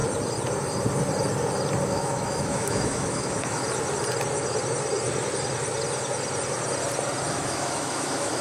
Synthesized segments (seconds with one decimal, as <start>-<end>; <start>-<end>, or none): 1.8-3.6; 7.3-8.4